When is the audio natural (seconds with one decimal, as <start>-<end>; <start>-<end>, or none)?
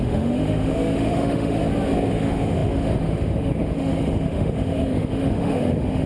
1.6-2.1